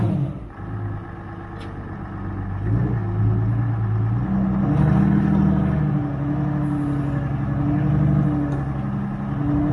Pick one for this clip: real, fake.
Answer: real